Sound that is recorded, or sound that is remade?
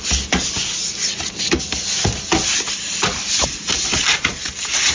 recorded